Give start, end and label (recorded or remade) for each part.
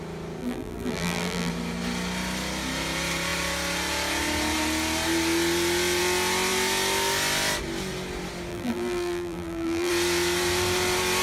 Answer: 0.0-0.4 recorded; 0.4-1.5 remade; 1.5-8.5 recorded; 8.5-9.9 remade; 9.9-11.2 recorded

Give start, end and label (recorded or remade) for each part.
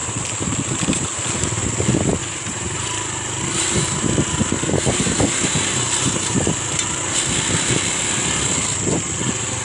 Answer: 0.0-2.2 recorded; 2.2-7.2 remade; 7.2-9.6 recorded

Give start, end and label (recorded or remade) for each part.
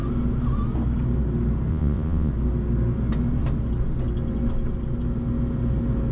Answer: 0.0-1.7 recorded; 1.7-2.3 remade; 2.3-6.1 recorded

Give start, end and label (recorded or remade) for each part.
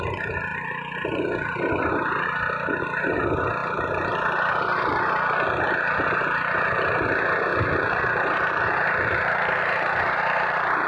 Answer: 0.0-7.5 recorded; 7.5-10.9 remade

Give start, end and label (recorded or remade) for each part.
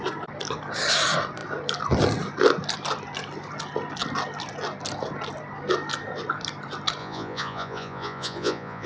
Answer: 0.0-7.0 recorded; 7.0-8.9 remade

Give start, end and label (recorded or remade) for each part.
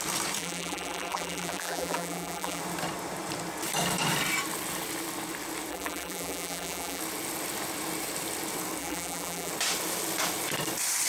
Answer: 0.0-0.4 recorded; 0.4-2.6 remade; 2.6-5.7 recorded; 5.7-7.0 remade; 7.0-8.8 recorded; 8.8-9.5 remade; 9.5-11.1 recorded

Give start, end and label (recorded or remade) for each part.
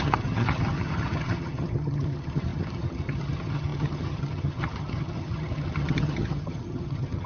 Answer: 0.0-7.3 remade